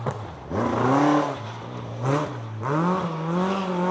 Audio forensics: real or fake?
real